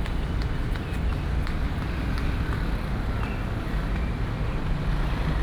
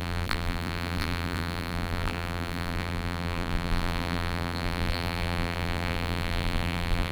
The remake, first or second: second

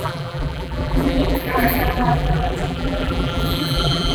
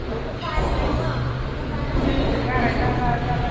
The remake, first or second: first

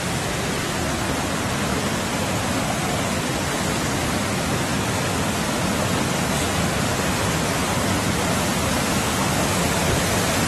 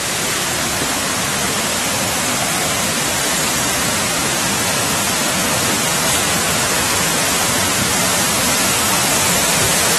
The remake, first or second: second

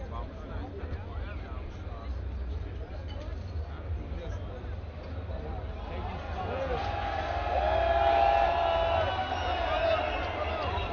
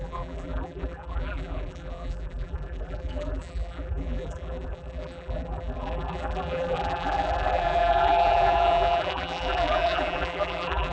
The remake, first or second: second